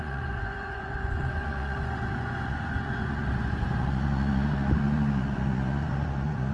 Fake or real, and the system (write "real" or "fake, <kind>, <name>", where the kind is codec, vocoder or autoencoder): fake, vocoder, Vocos